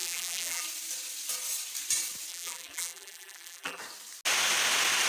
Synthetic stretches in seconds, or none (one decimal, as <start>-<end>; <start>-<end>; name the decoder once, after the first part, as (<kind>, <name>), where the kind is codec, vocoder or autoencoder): 0.0-0.6 (vocoder, BigVGAN v2); 2.3-3.8